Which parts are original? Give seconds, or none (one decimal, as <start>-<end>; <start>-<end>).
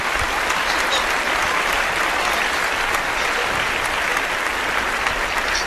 0.0-5.7